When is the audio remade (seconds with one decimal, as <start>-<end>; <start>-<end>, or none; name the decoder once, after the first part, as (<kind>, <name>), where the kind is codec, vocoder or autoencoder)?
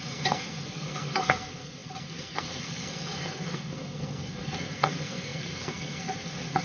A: 0.0-6.6 (codec, SNAC)